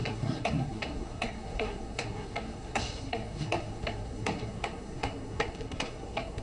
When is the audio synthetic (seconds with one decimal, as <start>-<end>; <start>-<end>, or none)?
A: 0.0-6.4